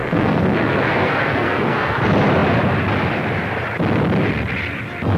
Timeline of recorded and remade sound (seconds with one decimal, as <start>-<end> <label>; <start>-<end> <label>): 0.0-2.0 remade; 2.0-5.2 recorded